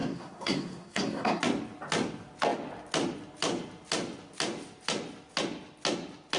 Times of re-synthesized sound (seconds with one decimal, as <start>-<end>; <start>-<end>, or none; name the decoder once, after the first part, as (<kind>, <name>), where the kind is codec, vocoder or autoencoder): 0.0-1.4 (codec, SNAC)